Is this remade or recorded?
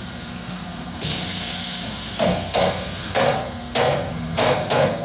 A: remade